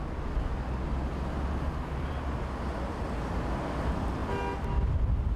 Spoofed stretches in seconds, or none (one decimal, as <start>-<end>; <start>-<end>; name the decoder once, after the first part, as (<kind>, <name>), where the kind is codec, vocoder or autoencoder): none